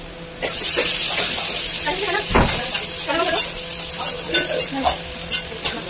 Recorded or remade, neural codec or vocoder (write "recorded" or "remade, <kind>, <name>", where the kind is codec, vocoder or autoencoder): recorded